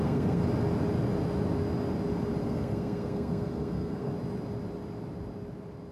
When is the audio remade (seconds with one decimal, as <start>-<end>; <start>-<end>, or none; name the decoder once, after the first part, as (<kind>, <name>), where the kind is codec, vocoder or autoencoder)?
0.0-0.4 (codec, SNAC); 2.4-4.1